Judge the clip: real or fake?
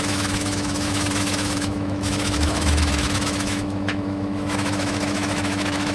fake